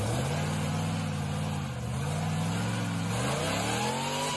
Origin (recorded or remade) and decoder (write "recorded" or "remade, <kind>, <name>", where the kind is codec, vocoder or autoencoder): recorded